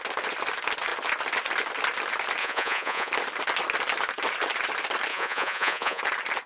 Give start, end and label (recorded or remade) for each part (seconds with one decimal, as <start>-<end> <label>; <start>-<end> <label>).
0.0-2.4 recorded; 2.4-3.1 remade; 3.1-5.1 recorded; 5.1-6.0 remade; 6.0-6.5 recorded